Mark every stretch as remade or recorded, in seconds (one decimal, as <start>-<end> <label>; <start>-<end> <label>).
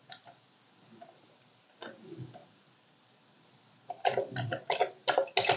0.0-5.6 recorded